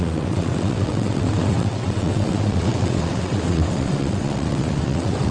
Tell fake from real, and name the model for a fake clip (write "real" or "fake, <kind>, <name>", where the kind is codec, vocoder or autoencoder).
fake, vocoder, WaveNeXt